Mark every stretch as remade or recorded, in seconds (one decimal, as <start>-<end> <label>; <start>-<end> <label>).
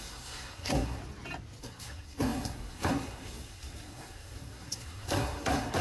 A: 0.0-1.0 remade; 1.0-1.6 recorded; 1.6-5.8 remade